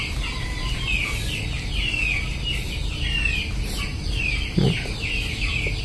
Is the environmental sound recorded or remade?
recorded